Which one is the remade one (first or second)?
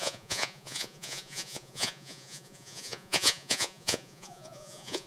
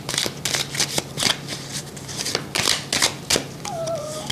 first